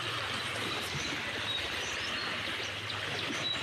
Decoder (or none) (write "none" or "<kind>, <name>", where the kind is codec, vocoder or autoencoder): vocoder, BigVGAN v2